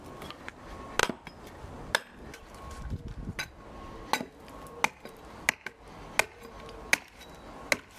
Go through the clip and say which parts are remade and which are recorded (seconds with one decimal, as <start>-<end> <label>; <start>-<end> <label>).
0.0-8.0 recorded